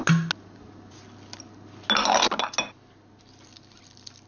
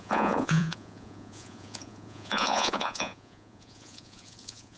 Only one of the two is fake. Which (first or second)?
second